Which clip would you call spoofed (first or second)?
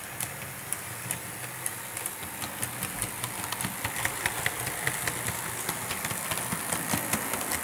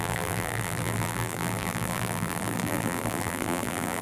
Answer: second